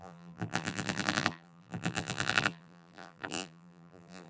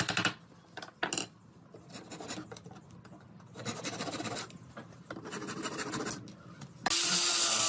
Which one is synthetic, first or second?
first